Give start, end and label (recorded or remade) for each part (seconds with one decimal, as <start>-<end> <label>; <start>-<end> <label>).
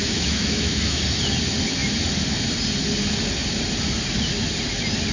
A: 0.0-1.0 remade; 1.0-5.1 recorded